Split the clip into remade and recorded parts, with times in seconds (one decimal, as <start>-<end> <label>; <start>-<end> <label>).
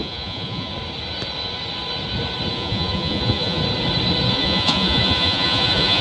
0.0-0.7 remade; 0.7-2.5 recorded; 2.5-3.6 remade; 3.6-4.3 recorded; 4.3-6.0 remade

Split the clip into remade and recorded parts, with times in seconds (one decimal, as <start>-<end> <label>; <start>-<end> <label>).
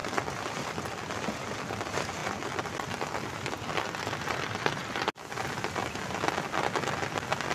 0.0-7.5 recorded